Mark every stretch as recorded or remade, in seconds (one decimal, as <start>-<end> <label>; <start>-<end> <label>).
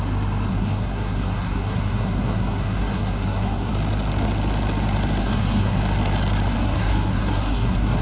0.0-0.5 recorded; 0.5-3.7 remade; 3.7-5.2 recorded; 5.2-5.8 remade; 5.8-6.5 recorded; 6.5-8.0 remade